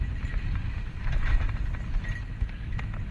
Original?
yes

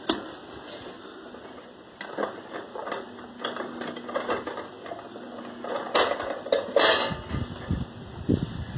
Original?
yes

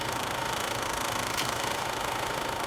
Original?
no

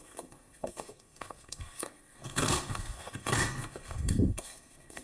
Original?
no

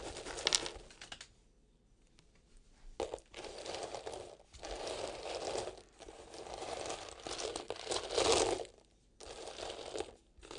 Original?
yes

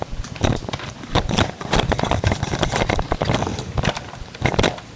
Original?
no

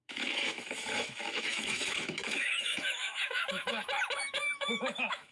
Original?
no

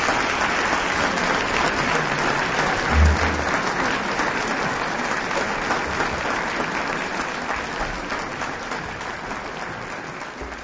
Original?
yes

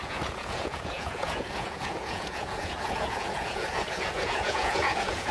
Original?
no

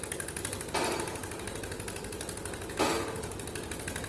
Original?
yes